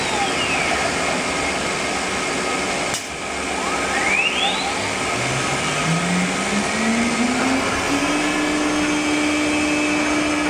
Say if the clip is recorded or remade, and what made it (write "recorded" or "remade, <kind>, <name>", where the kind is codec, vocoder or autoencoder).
recorded